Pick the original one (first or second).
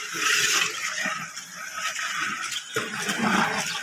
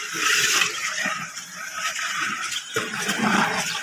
first